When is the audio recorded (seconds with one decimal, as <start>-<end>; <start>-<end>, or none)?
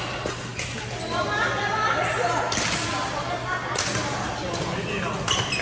0.0-5.6